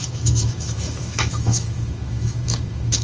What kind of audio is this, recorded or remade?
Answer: remade